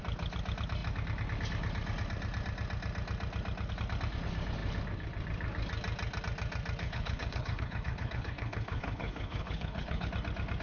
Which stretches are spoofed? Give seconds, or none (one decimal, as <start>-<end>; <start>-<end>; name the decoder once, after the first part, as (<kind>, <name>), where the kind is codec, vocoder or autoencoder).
6.8-10.1 (codec, HILCodec)